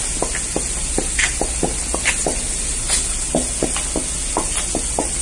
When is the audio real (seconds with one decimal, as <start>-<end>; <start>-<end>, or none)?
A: 0.0-5.2